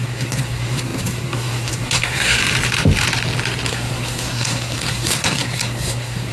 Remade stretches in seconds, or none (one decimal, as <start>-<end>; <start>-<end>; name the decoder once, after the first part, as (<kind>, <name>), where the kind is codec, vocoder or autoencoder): 0.0-2.4 (codec, SNAC); 3.7-6.3